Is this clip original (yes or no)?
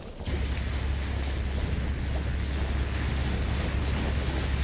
yes